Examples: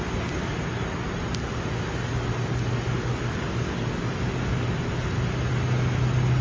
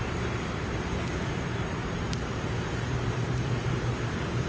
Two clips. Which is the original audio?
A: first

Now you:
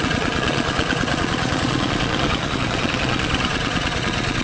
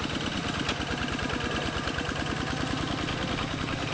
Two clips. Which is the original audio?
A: second